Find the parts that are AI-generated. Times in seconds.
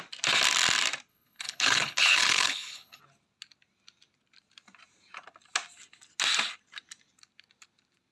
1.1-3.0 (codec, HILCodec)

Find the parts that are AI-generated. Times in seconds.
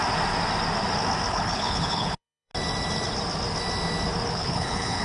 1.3-2.5 (codec, HILCodec); 4.3-5.0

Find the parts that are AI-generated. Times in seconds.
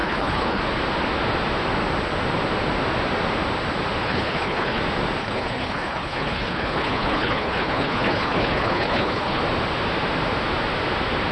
0.0-0.6 (codec, HILCodec); 4.0-4.8; 5.2-9.4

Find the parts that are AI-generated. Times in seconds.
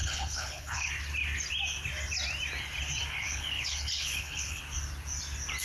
0.0-0.9 (codec, HILCodec); 3.2-4.6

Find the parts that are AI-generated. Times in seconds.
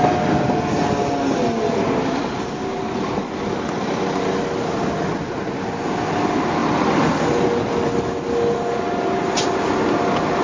none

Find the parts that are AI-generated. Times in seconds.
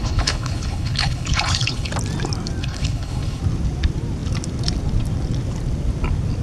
0.0-1.9 (codec, HILCodec); 2.6-3.4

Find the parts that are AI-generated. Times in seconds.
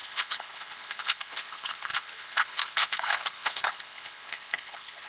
0.0-5.1 (codec, HILCodec)